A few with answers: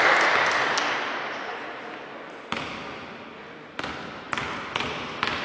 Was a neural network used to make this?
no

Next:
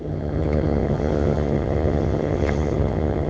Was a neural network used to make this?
yes